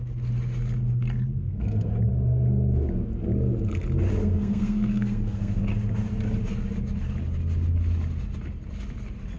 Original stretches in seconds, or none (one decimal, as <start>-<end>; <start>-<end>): 0.0-1.4; 1.9-4.2; 5.6-9.4